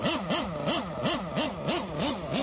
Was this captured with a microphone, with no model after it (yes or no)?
yes